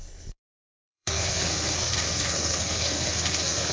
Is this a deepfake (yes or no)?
yes